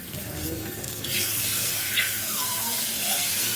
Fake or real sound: fake